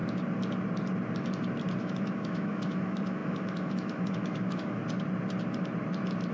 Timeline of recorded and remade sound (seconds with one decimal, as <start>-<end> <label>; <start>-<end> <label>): 0.0-1.8 recorded; 1.8-4.8 remade; 4.8-6.3 recorded